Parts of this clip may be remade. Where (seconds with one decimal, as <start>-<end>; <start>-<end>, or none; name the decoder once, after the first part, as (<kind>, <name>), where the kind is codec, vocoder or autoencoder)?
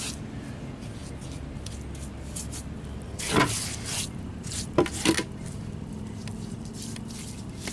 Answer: none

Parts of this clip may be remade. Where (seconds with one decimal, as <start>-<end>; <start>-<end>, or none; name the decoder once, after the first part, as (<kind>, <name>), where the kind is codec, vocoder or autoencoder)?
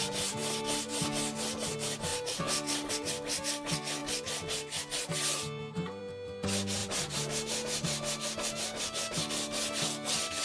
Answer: 2.1-2.9 (vocoder, BigVGAN v2)